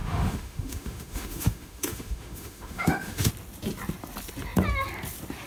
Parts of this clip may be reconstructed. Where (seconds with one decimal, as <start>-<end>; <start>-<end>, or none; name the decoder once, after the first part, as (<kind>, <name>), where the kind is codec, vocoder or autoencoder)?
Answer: 0.0-3.3 (autoencoder, DAC-VAE)